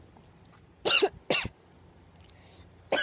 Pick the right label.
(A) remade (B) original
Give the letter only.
B